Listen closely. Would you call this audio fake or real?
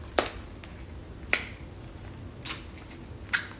real